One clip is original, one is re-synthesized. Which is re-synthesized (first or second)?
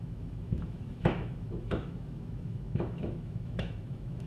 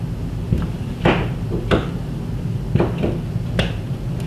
first